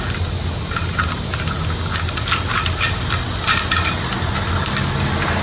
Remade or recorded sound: remade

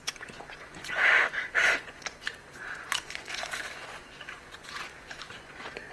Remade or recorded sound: remade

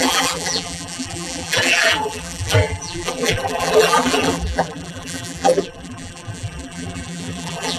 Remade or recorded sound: remade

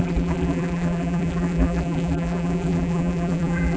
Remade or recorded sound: remade